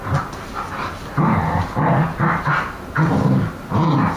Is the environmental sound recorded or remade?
recorded